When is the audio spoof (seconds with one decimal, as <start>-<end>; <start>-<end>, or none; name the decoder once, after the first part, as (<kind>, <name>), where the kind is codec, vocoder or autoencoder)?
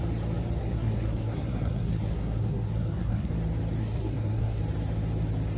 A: 0.6-3.3 (codec, SNAC); 3.8-4.6